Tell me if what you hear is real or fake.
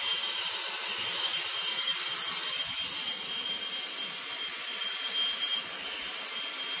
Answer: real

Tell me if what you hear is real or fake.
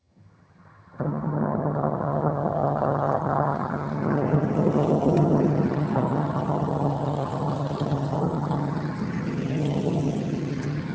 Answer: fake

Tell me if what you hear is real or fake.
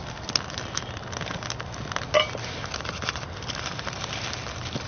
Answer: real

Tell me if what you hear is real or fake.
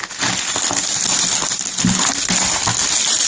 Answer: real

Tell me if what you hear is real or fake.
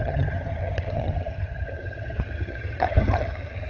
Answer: fake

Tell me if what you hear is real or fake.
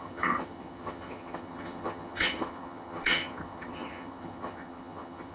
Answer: fake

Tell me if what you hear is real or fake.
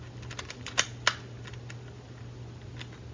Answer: real